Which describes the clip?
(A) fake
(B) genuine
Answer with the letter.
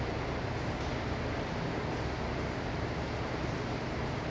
B